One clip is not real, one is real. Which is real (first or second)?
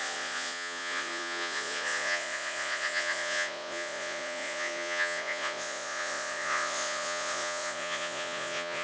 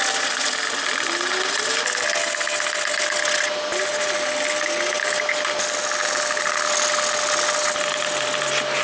second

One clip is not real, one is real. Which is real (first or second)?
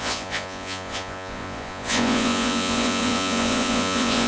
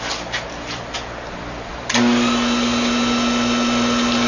second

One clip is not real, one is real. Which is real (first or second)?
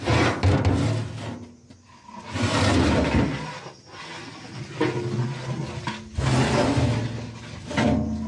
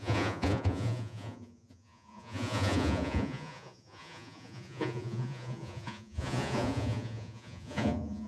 first